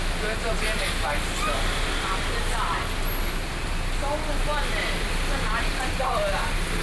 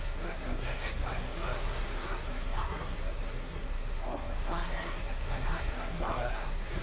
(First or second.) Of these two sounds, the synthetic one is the second